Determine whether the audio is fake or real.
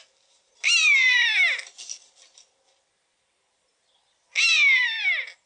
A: real